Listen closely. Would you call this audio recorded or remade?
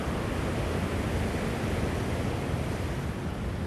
recorded